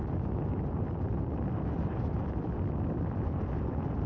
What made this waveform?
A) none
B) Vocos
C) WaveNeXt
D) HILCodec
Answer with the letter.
A